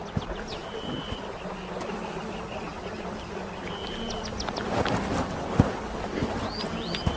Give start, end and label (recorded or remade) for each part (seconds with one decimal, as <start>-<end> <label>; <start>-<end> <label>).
0.0-7.2 recorded